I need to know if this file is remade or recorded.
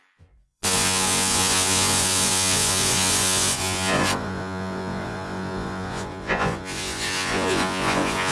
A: remade